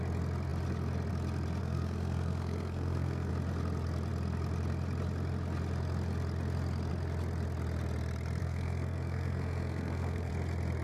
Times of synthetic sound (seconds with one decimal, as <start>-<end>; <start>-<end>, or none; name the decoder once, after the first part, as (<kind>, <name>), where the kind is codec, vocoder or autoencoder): 1.6-3.3 (codec, SNAC); 8.4-10.3